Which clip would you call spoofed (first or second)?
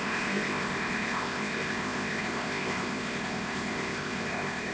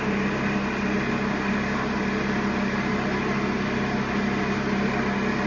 first